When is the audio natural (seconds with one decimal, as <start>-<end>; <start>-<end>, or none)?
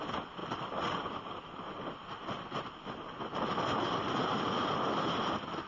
0.0-5.7